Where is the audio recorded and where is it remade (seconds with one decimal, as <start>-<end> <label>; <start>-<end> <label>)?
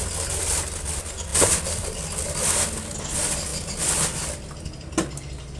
0.0-1.3 recorded; 1.3-2.4 remade; 2.4-5.6 recorded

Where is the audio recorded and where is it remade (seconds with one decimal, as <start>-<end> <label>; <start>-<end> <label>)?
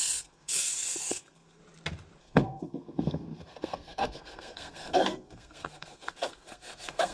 0.0-1.6 remade; 1.6-2.2 recorded; 2.2-7.1 remade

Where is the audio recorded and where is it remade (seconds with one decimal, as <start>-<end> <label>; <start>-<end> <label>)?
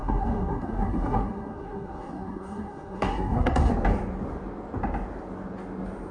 0.0-3.7 remade; 3.7-6.1 recorded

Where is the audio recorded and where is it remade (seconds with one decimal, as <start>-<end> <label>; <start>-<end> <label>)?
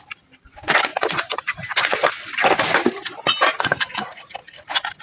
0.0-5.0 recorded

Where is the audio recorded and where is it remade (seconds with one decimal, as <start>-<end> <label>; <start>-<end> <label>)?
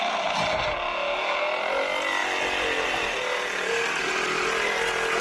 0.0-5.2 recorded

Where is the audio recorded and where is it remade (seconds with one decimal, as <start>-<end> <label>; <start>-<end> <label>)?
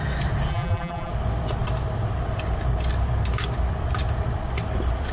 0.0-0.5 recorded; 0.5-1.1 remade; 1.1-5.1 recorded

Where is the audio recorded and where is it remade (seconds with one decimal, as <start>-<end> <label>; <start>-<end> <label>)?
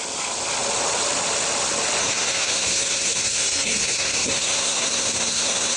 0.0-2.0 recorded; 2.0-5.8 remade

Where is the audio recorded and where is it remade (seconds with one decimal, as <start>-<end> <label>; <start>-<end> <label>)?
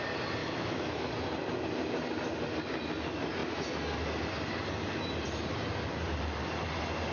0.0-0.4 recorded; 0.4-1.1 remade; 1.1-7.1 recorded